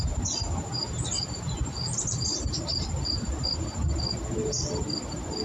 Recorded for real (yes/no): yes